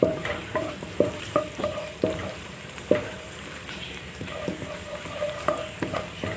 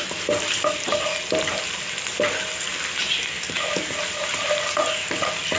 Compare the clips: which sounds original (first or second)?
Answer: second